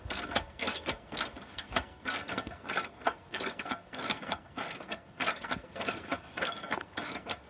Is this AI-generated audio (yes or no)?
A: yes